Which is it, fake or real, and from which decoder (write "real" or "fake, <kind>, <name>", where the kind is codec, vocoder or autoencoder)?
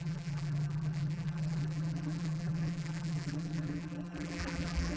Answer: fake, vocoder, BigVGAN v2